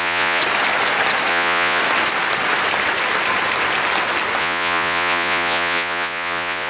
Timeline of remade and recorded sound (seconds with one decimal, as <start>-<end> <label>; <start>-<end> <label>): 0.0-0.4 remade; 0.4-1.3 recorded; 1.3-1.8 remade; 1.8-4.4 recorded; 4.4-6.7 remade